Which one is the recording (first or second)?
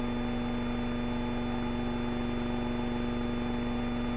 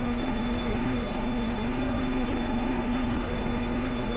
first